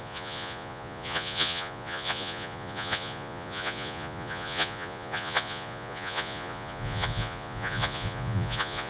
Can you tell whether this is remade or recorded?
remade